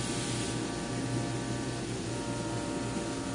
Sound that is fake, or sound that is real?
real